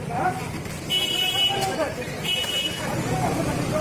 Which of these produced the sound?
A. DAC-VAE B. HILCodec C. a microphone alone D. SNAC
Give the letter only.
C